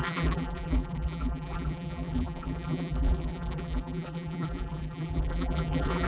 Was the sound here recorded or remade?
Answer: remade